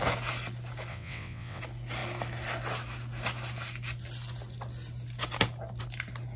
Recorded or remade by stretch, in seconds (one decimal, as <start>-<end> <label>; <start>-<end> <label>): 0.0-0.9 recorded; 0.9-1.6 remade; 1.6-6.4 recorded

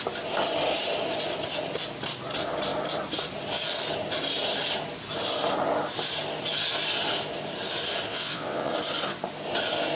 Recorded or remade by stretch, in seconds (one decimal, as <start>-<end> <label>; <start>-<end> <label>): 0.0-8.1 recorded; 8.1-8.7 remade; 8.7-10.0 recorded

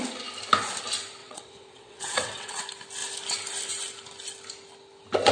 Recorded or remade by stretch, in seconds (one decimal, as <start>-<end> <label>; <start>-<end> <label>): 0.0-1.2 recorded; 1.2-2.6 remade; 2.6-5.3 recorded

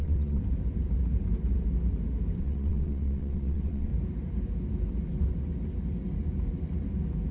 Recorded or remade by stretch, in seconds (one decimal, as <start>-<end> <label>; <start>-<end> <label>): 0.0-0.4 remade; 0.4-2.4 recorded; 2.4-3.9 remade; 3.9-7.3 recorded

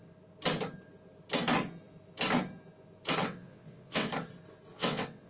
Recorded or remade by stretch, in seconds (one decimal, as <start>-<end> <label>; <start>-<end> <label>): 0.0-3.2 recorded; 3.2-4.1 remade; 4.1-4.7 recorded; 4.7-5.3 remade

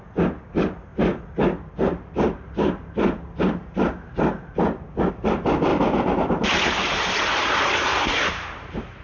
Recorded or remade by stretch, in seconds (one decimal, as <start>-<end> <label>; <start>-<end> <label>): 0.0-9.0 recorded